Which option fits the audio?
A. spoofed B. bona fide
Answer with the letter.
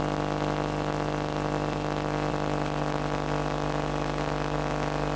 B